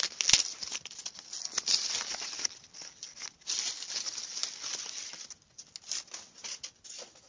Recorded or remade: recorded